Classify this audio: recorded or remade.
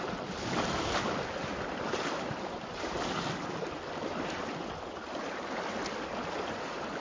recorded